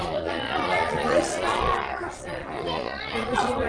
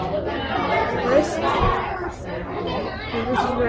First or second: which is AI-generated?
first